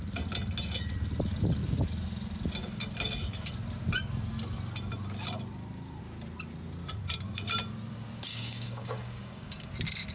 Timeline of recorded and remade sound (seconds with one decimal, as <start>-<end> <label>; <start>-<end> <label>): 0.0-8.3 recorded; 8.3-9.7 remade; 9.7-10.1 recorded